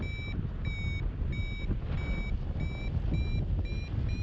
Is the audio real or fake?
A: real